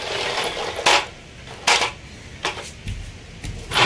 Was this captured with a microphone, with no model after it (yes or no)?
yes